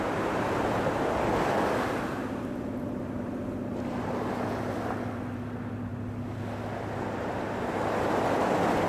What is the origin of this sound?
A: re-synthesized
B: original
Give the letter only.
B